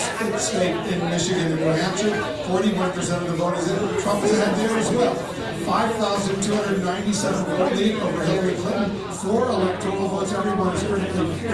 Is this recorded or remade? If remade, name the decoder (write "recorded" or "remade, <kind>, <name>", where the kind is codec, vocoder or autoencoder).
recorded